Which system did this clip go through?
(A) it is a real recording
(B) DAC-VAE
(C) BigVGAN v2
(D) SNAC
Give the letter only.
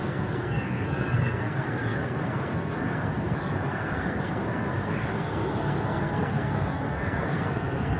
D